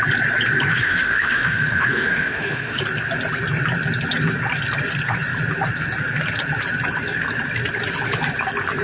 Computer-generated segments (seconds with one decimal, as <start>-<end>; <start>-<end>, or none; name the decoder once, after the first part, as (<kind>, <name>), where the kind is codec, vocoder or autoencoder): 0.7-2.8 (autoencoder, DAC-VAE)